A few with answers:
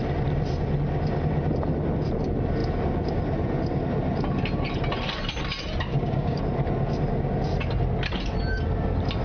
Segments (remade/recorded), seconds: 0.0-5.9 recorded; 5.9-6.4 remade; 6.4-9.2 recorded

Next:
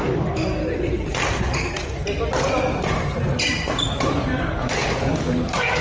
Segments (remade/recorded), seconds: 0.0-0.6 remade; 0.6-4.1 recorded; 4.1-5.8 remade

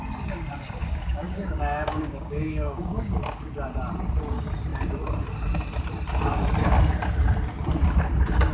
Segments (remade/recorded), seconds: 0.0-0.8 recorded; 0.8-3.2 remade; 3.2-8.5 recorded

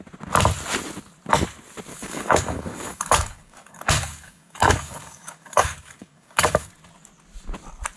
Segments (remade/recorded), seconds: 0.0-1.9 recorded; 1.9-6.7 remade; 6.7-8.0 recorded

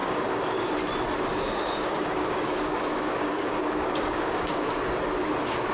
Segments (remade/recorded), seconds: 0.0-0.7 remade; 0.7-1.3 recorded; 1.3-4.7 remade; 4.7-5.7 recorded

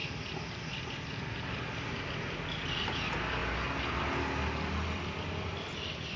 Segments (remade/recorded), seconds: 0.0-6.2 recorded

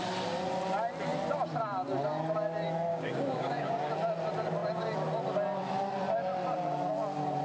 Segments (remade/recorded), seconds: 0.0-2.9 recorded; 2.9-3.9 remade; 3.9-7.4 recorded